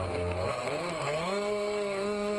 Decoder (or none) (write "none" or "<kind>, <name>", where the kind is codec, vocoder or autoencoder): codec, SNAC